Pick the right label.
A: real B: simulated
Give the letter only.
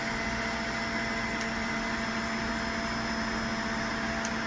A